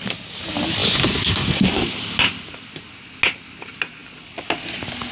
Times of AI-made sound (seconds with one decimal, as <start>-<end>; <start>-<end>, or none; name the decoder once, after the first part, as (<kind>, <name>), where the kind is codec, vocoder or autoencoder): none

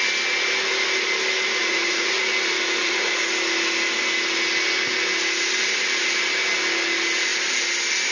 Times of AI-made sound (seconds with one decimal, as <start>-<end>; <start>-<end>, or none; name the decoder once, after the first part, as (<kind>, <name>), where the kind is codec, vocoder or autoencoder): 1.6-2.2 (vocoder, Vocos); 2.8-3.3

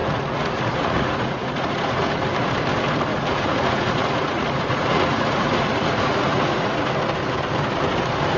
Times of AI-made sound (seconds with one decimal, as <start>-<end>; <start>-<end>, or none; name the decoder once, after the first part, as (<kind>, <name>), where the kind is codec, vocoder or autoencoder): 0.0-2.2 (vocoder, Vocos); 3.1-6.9

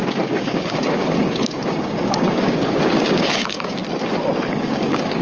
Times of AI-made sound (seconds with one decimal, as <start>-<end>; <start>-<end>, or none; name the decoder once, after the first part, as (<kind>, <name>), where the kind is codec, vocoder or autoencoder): 0.0-3.8 (codec, DAC); 4.5-5.2